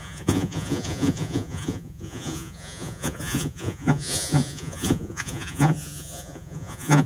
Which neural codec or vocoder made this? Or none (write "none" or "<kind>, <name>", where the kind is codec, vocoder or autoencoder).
vocoder, Vocos